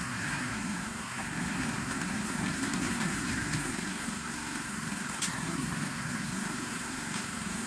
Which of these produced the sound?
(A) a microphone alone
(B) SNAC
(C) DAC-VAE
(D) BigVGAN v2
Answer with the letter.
B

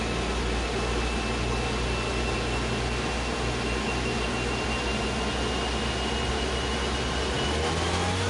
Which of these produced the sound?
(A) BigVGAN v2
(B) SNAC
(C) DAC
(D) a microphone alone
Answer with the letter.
D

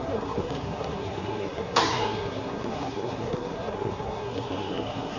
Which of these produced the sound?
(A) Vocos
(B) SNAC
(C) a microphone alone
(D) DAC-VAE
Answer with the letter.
B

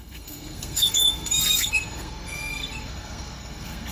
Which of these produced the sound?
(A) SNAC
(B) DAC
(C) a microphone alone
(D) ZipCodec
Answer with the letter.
A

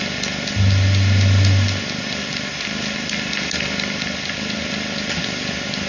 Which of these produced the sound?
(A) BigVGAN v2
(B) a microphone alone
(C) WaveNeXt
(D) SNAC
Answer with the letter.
B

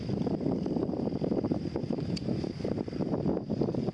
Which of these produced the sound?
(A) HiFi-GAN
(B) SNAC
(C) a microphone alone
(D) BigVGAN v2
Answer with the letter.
C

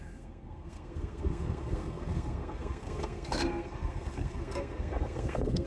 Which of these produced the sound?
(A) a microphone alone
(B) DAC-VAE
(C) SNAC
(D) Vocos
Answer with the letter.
C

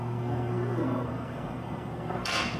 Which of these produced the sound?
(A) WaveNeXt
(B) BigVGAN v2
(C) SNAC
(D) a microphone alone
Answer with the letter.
C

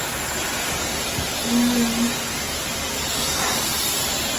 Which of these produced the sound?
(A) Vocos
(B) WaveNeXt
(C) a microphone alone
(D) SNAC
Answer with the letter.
C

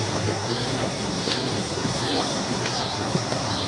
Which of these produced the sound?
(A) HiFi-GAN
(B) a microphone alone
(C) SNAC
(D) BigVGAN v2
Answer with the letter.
C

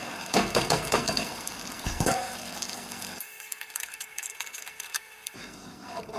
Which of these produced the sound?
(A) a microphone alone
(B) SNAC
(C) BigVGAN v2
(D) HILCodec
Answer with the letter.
B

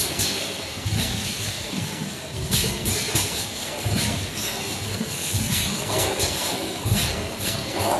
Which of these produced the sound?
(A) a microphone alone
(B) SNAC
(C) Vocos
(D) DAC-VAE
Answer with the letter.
B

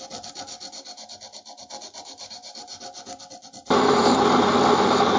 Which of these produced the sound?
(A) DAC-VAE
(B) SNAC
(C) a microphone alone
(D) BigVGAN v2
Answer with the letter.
C